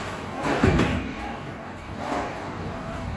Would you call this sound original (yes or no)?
no